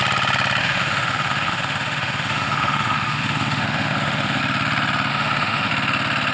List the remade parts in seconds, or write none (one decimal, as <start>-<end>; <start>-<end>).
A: 0.6-4.4; 5.1-5.7

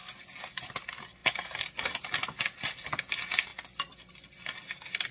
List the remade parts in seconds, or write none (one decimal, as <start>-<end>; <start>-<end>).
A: none

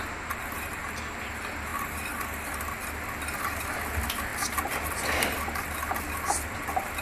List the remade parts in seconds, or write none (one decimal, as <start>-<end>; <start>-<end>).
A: none